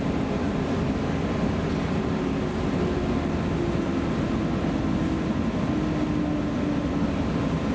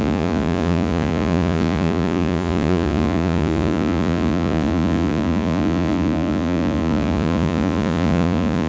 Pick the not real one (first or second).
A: second